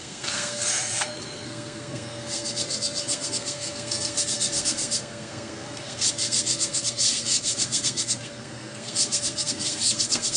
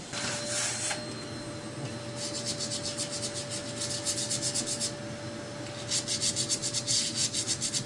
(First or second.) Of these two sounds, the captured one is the second